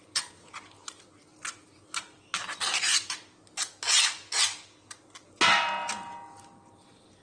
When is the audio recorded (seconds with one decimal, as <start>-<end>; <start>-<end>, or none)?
0.0-7.2

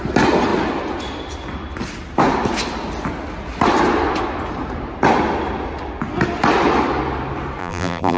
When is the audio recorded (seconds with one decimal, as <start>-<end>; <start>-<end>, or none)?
0.0-7.6

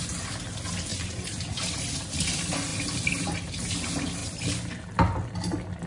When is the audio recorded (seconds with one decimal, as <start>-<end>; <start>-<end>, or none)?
0.0-0.9; 1.7-4.2; 4.9-5.9

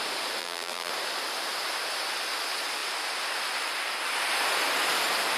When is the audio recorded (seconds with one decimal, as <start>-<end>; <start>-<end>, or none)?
0.0-0.4; 0.9-5.4

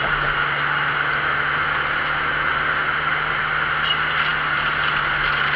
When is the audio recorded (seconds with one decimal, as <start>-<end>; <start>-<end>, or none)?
0.0-5.6

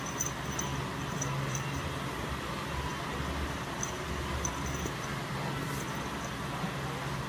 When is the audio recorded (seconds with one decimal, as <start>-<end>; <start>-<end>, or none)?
0.0-0.7; 2.0-7.3

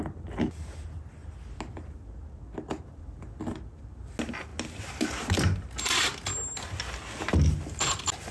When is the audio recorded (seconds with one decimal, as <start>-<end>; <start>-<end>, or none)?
0.0-8.3